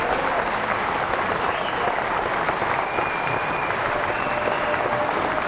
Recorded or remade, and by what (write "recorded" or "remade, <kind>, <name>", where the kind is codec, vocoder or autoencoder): recorded